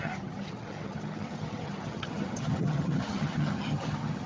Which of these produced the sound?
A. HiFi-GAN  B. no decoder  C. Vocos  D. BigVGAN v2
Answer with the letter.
A